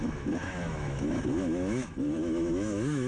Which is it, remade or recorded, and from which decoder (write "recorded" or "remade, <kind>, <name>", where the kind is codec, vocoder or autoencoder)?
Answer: remade, autoencoder, DAC-VAE